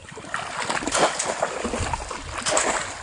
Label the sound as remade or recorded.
recorded